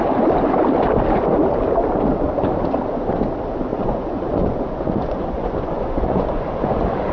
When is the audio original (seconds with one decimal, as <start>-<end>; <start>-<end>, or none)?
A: 0.0-3.7